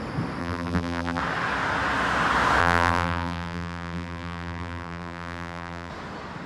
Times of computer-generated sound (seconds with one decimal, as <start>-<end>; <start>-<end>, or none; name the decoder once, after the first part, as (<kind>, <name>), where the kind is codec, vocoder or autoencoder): 0.4-1.2 (vocoder, BigVGAN v2); 2.6-5.9